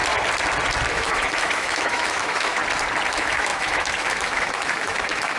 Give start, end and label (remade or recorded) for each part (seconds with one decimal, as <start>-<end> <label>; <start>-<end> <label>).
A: 0.0-0.9 recorded; 0.9-2.6 remade; 2.6-3.1 recorded; 3.1-5.4 remade